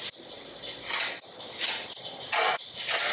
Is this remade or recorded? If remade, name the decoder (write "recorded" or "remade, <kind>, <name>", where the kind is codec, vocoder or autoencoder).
recorded